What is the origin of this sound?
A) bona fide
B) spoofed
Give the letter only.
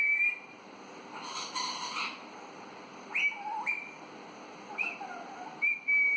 A